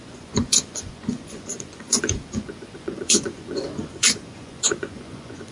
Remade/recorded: remade